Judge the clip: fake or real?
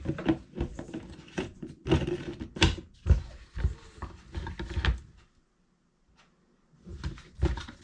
real